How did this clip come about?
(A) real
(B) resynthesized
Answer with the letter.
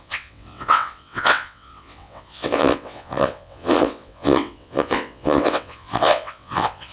B